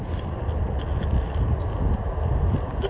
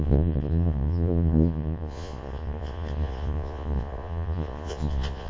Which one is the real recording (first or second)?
first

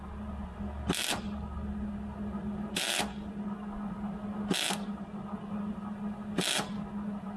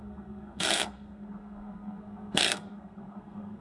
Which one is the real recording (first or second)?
first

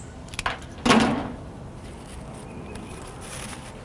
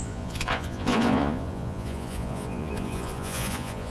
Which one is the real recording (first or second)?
first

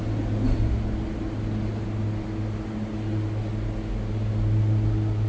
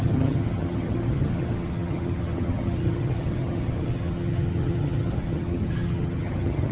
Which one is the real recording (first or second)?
first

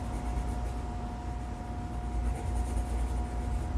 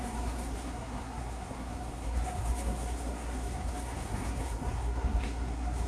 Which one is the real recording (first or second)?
first